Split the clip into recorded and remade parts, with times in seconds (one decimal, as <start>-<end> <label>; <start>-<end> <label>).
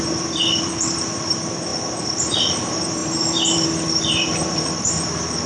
0.0-5.5 remade